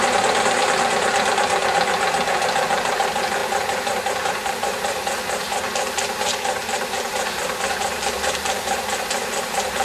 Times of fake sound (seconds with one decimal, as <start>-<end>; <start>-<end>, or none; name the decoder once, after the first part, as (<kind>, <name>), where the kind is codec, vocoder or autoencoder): 0.0-6.6 (vocoder, BigVGAN v2); 7.1-9.8